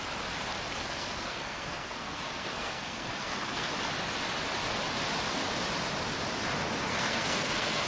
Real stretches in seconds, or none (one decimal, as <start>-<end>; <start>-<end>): 0.0-0.8; 3.7-6.9